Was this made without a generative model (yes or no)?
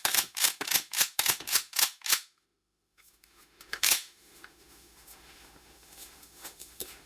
no